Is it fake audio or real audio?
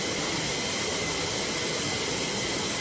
real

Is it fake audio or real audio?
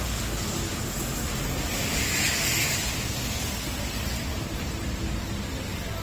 real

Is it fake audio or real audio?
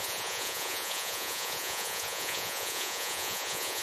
fake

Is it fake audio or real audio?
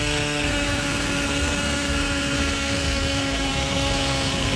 fake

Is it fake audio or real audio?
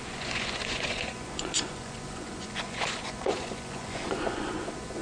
fake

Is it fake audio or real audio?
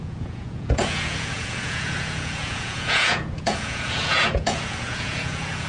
fake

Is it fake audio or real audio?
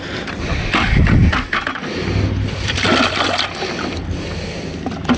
real